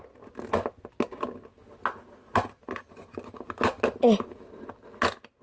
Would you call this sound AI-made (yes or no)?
no